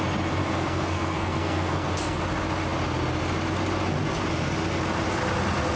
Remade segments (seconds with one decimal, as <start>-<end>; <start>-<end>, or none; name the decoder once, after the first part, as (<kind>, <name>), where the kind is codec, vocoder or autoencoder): 0.4-2.2 (codec, SNAC)